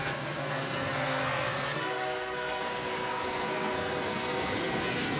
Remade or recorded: remade